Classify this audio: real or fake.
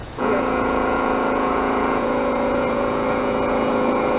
fake